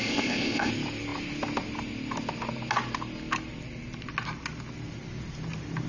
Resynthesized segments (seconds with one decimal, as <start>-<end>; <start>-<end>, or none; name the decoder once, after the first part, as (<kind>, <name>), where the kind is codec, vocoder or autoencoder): 0.0-0.7 (codec, ZipCodec)